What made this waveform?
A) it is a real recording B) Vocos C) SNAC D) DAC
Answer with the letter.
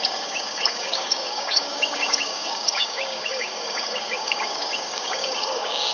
D